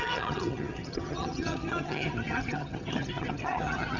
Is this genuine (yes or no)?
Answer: no